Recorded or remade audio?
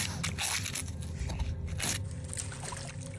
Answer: recorded